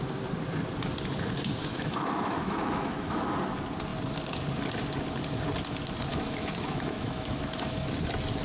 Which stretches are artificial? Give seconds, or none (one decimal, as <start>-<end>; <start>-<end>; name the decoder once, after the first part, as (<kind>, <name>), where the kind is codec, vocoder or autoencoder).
1.6-3.3 (autoencoder, DAC-VAE); 6.1-7.9